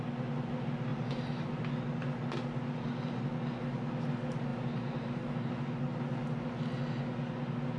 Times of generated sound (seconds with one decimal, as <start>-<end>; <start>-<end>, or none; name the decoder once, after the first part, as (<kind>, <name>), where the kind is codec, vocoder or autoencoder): 0.9-1.6 (vocoder, BigVGAN v2); 4.5-5.5